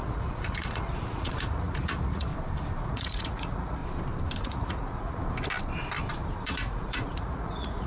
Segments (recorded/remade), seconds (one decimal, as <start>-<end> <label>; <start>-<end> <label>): 0.0-2.3 remade; 2.3-2.8 recorded; 2.8-3.8 remade; 3.8-4.4 recorded; 4.4-5.2 remade; 5.2-6.3 recorded; 6.3-7.9 remade